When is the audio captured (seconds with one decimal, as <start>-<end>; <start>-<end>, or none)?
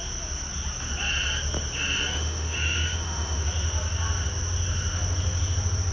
0.0-2.1; 3.4-5.9